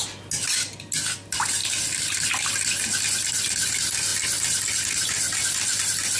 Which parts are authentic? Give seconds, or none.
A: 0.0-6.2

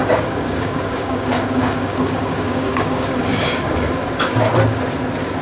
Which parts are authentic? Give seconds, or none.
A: 4.5-5.4

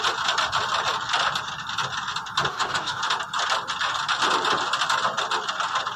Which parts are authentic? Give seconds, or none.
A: 0.0-2.5; 3.0-6.0